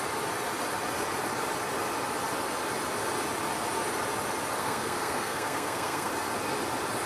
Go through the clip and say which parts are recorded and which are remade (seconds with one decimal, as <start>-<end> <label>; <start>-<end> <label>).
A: 0.0-4.6 recorded; 4.6-6.1 remade; 6.1-7.1 recorded